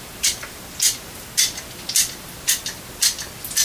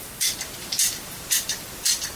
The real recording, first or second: first